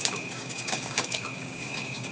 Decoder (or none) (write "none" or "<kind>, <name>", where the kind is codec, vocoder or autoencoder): codec, DAC